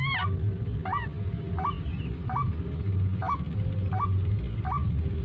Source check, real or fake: real